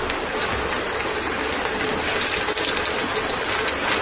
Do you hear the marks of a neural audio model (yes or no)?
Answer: no